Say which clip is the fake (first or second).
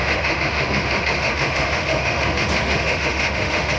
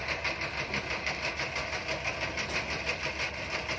first